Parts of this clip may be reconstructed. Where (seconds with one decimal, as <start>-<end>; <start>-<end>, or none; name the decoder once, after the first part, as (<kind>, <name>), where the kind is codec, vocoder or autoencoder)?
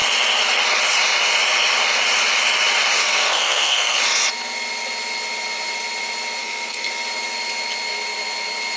3.0-4.0 (codec, SNAC); 6.4-6.9